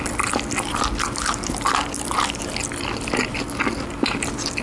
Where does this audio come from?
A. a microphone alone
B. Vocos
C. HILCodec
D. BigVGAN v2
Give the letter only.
A